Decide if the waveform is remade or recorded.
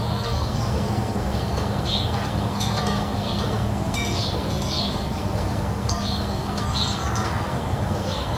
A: remade